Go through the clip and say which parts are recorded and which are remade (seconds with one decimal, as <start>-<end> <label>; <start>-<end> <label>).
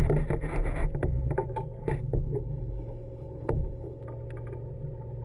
0.0-1.9 recorded; 1.9-4.0 remade; 4.0-5.2 recorded